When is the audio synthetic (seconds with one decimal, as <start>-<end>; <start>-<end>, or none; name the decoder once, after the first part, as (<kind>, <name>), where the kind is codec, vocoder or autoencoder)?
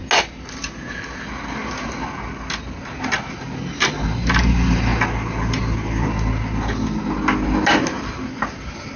none